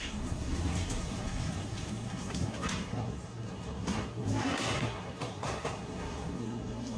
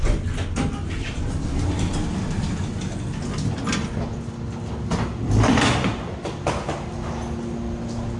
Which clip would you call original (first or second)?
second